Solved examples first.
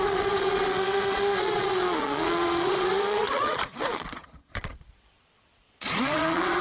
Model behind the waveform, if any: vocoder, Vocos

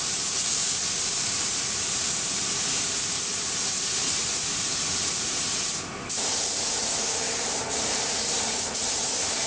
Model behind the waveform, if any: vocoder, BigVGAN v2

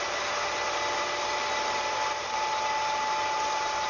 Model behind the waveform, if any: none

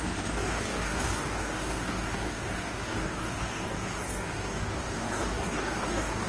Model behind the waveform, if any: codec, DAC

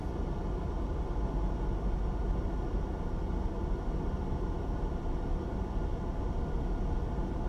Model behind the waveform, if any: none